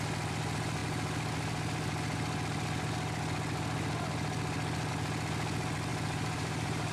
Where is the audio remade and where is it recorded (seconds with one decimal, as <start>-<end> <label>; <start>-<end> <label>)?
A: 0.0-5.9 recorded; 5.9-6.9 remade

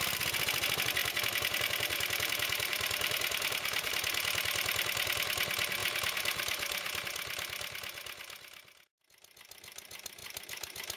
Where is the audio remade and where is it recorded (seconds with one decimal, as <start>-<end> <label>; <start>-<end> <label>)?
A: 0.0-1.0 recorded; 1.0-3.9 remade; 3.9-5.8 recorded; 5.8-7.0 remade; 7.0-10.2 recorded; 10.2-11.0 remade

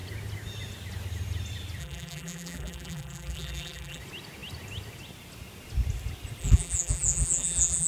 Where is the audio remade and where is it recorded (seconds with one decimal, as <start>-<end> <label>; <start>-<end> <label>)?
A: 0.0-1.8 recorded; 1.8-4.0 remade; 4.0-6.4 recorded; 6.4-7.9 remade

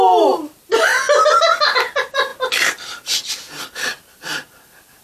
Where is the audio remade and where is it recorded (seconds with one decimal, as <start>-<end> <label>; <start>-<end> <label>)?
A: 0.0-0.9 remade; 0.9-1.6 recorded; 1.6-5.0 remade

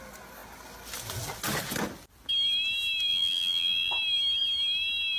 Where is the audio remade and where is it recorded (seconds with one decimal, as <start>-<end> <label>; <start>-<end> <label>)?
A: 0.0-3.1 recorded; 3.1-3.9 remade; 3.9-5.2 recorded

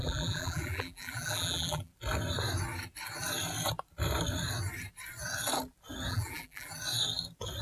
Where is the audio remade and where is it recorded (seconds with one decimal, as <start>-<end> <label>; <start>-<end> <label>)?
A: 0.0-1.9 remade; 1.9-6.1 recorded; 6.1-6.7 remade; 6.7-7.6 recorded

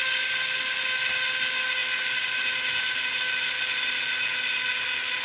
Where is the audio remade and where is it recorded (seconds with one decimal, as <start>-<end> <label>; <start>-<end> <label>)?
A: 0.0-5.2 recorded

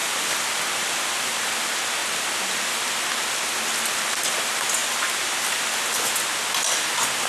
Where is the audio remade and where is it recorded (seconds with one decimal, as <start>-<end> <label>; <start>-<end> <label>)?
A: 0.0-0.6 remade; 0.6-4.8 recorded; 4.8-5.8 remade; 5.8-7.3 recorded